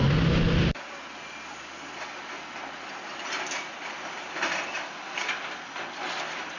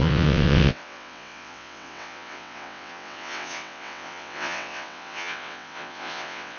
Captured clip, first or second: first